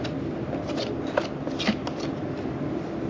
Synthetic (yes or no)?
no